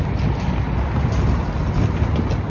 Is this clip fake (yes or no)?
no